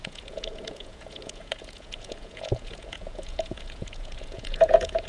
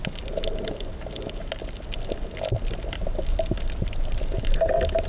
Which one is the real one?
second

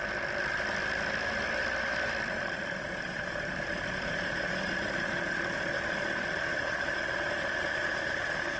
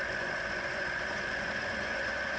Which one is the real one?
first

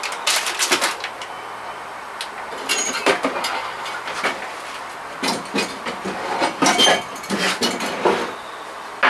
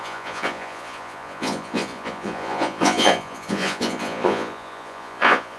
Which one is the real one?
first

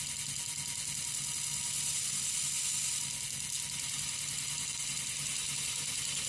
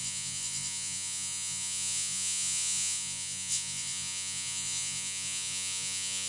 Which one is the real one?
first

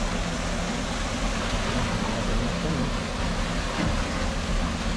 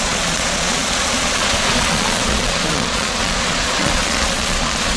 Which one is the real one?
first